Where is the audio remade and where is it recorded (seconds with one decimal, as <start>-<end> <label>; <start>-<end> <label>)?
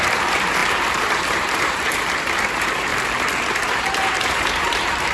0.0-2.9 remade; 2.9-3.5 recorded; 3.5-5.1 remade